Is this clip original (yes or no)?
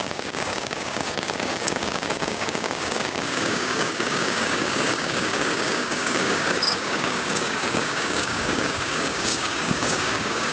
no